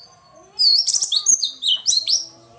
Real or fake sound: real